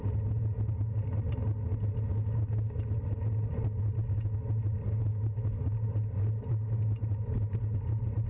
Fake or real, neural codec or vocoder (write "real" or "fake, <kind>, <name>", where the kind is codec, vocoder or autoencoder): real